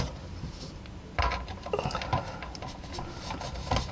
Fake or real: real